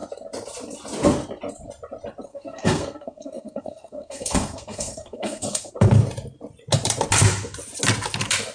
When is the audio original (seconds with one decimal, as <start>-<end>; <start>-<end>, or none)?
0.0-2.3; 5.7-8.5